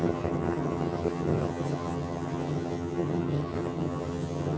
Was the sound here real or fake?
fake